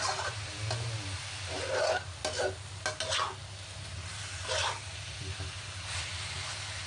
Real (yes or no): yes